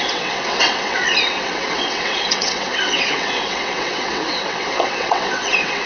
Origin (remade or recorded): remade